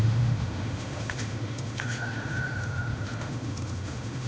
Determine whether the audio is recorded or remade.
remade